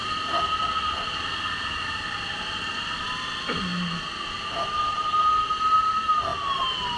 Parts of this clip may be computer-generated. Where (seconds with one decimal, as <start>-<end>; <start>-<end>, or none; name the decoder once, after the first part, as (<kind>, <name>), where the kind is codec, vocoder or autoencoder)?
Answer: none